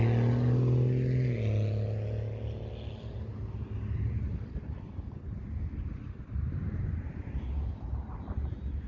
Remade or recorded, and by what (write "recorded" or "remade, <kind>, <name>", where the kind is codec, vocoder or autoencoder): recorded